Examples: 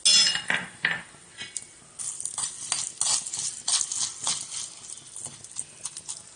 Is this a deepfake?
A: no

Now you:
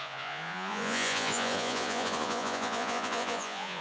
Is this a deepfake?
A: yes